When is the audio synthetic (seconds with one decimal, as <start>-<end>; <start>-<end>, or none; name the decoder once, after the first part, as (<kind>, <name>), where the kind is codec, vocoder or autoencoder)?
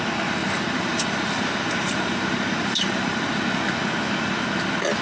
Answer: 0.4-3.4 (vocoder, BigVGAN v2)